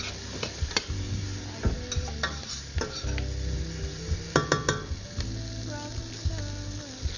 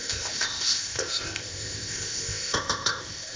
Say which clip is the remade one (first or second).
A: second